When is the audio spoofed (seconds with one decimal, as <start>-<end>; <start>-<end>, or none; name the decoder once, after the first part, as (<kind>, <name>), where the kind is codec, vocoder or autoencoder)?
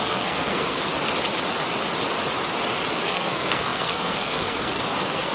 0.0-0.9 (codec, SNAC); 2.9-5.3